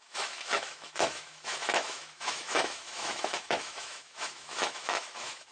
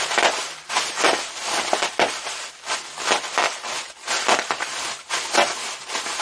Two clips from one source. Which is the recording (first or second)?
second